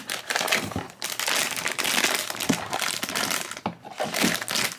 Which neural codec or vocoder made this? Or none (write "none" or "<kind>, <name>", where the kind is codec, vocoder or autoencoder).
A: none